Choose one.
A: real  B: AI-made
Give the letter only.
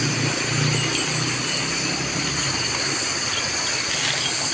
A